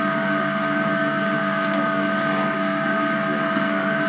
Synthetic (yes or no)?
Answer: yes